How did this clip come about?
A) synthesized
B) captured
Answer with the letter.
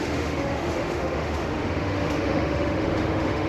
A